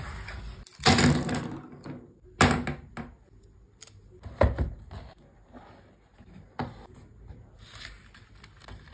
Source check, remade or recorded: recorded